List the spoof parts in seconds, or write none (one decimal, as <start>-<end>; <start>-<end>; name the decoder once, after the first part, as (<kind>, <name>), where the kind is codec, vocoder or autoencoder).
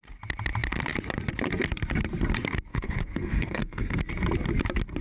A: 2.7-4.0 (codec, SNAC)